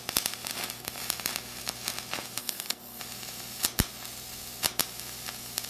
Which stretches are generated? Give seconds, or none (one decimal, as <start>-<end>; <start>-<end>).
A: 2.4-3.0